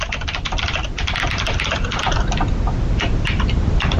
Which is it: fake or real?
fake